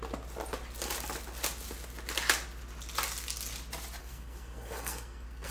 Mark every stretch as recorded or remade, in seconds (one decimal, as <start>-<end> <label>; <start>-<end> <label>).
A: 0.0-4.0 recorded; 4.0-5.5 remade